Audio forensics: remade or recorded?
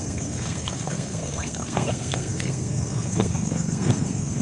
remade